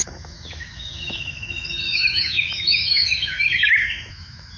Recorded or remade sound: remade